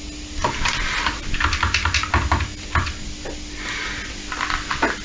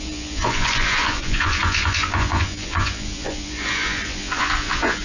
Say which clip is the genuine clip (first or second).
first